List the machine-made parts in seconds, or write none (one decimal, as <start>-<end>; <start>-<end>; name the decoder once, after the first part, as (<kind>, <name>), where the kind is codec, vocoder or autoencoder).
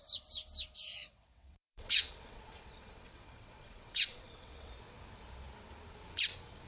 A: 0.9-4.7 (vocoder, WaveNeXt)